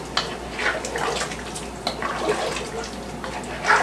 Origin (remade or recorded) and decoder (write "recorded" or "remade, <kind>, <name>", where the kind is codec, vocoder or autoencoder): recorded